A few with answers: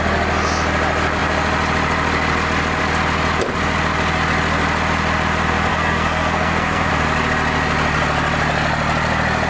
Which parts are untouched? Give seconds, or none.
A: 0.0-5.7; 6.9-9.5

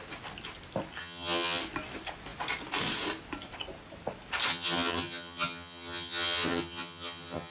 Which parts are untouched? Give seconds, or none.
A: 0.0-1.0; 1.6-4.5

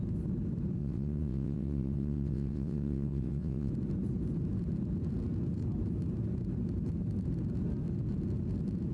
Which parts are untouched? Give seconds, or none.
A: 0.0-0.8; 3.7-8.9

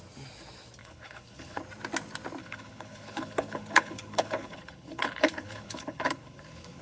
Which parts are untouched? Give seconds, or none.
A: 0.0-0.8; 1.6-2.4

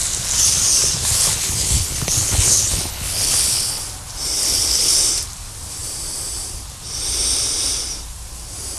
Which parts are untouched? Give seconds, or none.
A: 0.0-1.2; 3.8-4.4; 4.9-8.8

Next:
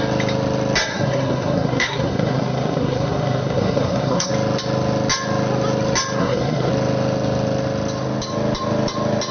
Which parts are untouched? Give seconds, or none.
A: 0.0-0.9; 4.3-6.2; 6.7-9.3

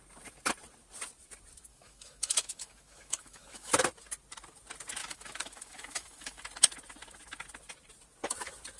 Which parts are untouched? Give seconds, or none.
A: 0.0-1.7; 3.7-5.0; 6.4-8.8